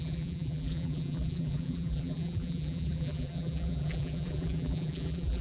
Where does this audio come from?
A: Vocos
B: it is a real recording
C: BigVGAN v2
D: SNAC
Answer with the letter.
C